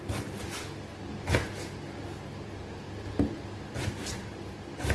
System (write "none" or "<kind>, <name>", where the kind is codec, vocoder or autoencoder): none